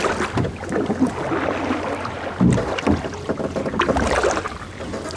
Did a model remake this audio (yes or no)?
no